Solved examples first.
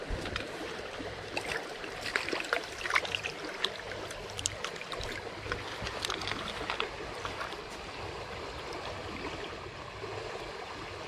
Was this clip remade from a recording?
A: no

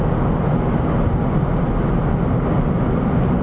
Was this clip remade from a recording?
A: no